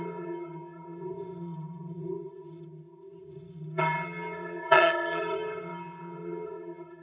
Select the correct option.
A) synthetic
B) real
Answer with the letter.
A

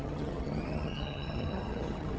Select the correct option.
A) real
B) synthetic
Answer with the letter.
B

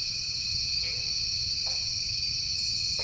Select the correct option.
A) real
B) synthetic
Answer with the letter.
B